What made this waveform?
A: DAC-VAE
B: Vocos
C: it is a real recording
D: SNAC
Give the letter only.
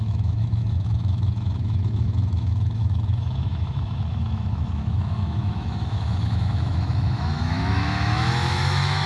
A